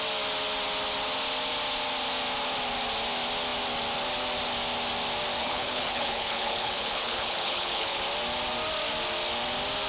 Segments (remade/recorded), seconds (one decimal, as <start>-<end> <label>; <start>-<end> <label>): 0.0-5.4 recorded; 5.4-8.0 remade; 8.0-9.9 recorded

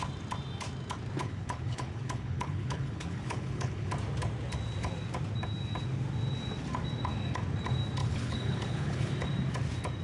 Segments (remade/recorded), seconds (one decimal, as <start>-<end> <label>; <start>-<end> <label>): 0.0-1.2 recorded; 1.2-3.9 remade; 3.9-8.0 recorded; 8.0-9.1 remade; 9.1-10.0 recorded

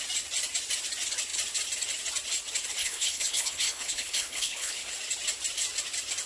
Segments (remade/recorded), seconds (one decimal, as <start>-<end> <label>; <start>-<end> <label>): 0.0-2.8 recorded; 2.8-4.9 remade; 4.9-6.3 recorded

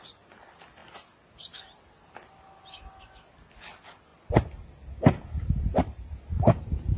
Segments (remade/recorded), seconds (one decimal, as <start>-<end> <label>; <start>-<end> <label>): 0.0-7.0 recorded

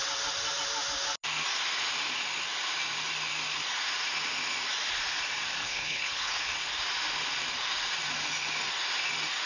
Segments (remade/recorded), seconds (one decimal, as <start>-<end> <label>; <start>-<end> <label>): 0.0-5.6 recorded; 5.6-6.3 remade; 6.3-9.5 recorded